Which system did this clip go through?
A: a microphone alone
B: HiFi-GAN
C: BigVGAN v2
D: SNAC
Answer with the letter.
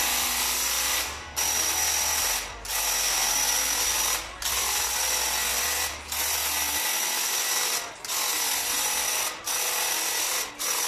A